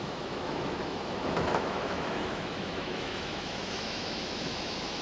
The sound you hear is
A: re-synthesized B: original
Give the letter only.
A